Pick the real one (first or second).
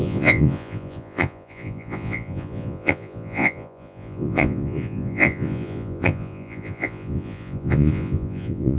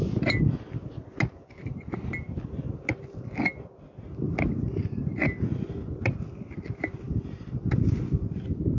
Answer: second